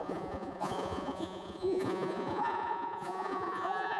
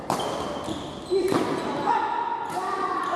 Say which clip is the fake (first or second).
first